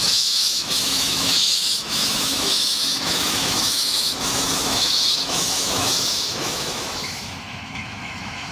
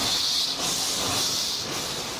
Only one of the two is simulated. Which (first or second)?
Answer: first